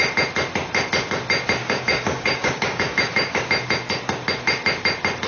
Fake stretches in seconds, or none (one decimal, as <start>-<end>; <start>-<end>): 1.6-3.5

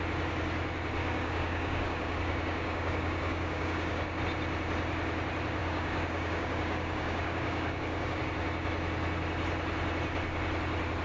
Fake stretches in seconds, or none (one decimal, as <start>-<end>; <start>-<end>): 1.0-4.2; 5.6-8.2

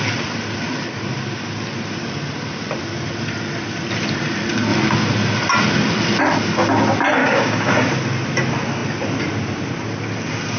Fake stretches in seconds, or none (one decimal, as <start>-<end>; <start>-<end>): 7.2-7.7

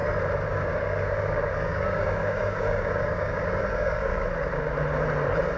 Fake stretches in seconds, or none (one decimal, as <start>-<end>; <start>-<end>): 0.5-4.1

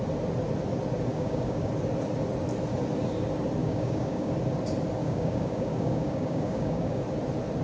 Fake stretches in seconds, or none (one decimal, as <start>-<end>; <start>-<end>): 1.1-1.7; 3.6-4.3; 5.0-7.0

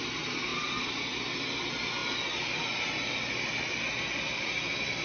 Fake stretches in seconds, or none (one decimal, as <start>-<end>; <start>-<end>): none